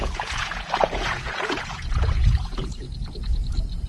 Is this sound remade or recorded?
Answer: remade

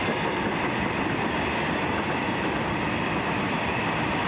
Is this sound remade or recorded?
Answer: recorded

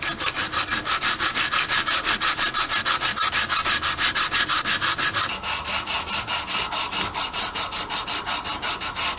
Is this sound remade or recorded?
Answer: recorded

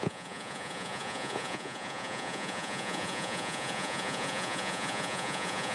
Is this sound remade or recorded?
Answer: remade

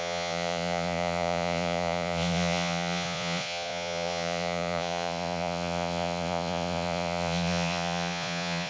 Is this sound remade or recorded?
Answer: remade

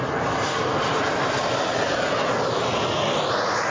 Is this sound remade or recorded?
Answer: recorded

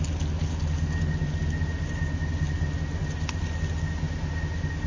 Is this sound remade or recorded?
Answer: recorded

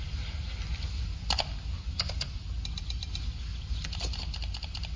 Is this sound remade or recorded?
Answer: recorded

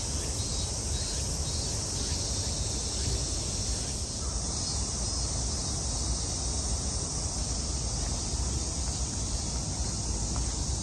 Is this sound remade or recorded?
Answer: recorded